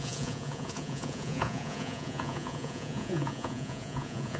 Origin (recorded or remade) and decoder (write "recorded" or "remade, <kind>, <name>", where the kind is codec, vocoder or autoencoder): remade, vocoder, Vocos